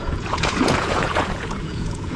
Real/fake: fake